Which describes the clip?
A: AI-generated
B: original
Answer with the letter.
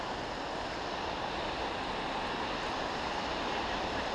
B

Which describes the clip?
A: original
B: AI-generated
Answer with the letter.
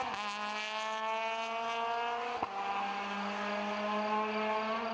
A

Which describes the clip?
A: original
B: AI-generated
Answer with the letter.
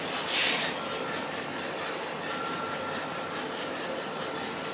A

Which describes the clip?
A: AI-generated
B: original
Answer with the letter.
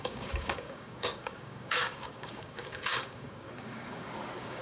A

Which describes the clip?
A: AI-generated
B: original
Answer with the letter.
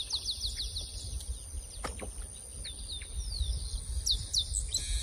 B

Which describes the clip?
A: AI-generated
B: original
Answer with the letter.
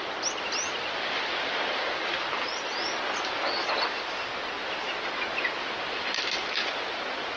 B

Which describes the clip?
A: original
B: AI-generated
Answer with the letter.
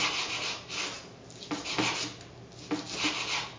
A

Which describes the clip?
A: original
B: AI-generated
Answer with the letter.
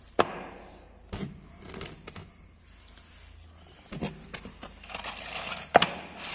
A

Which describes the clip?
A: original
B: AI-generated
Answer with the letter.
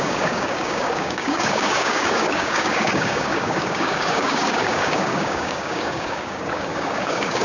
B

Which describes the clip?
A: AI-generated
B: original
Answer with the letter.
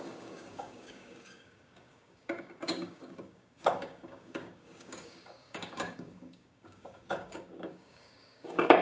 A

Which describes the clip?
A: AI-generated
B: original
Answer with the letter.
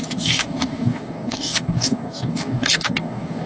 A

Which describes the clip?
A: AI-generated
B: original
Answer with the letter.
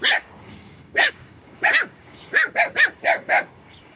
A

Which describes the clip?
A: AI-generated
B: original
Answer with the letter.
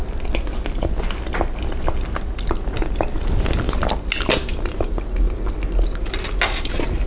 B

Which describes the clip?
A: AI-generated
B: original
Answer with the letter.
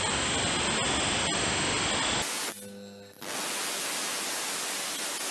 B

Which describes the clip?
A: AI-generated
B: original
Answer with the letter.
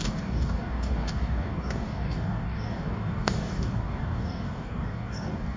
A